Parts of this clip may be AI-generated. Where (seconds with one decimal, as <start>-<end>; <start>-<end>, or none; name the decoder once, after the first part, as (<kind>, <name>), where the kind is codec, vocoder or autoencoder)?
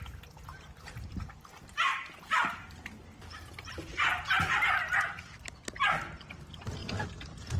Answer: 1.9-4.5 (vocoder, BigVGAN v2)